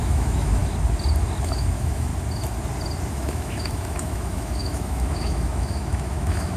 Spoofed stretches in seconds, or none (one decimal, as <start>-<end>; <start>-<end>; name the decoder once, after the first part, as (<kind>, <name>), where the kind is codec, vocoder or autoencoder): 0.0-0.6 (autoencoder, DAC-VAE); 1.4-2.1; 3.1-6.6